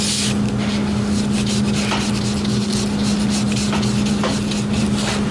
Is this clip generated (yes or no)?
no